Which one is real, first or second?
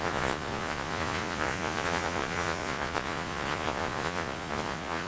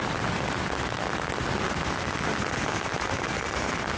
second